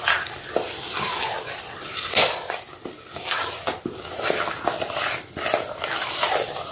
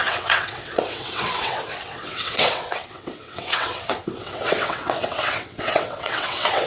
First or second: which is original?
first